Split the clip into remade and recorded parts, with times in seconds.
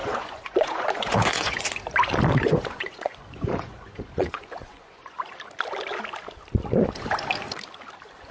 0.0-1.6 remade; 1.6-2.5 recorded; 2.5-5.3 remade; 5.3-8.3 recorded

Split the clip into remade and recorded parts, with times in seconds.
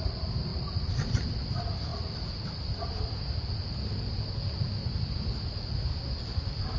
0.0-6.8 recorded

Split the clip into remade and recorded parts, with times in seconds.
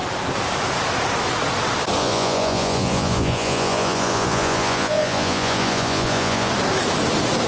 0.0-2.0 recorded; 2.0-6.5 remade; 6.5-7.5 recorded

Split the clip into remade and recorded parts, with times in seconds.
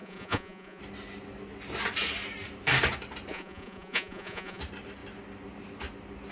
0.0-0.8 remade; 0.8-3.3 recorded; 3.3-4.6 remade; 4.6-6.3 recorded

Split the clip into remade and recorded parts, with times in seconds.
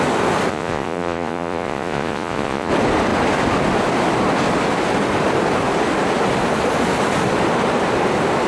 0.0-0.5 recorded; 0.5-2.7 remade; 2.7-8.5 recorded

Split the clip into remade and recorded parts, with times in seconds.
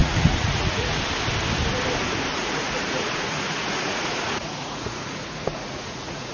0.0-1.0 remade; 1.0-2.3 recorded; 2.3-6.3 remade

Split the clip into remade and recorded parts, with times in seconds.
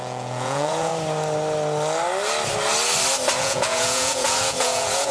0.0-0.9 remade; 0.9-3.4 recorded; 3.4-5.1 remade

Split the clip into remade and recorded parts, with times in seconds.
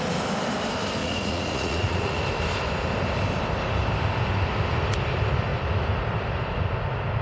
0.0-1.0 recorded; 1.0-2.2 remade; 2.2-7.2 recorded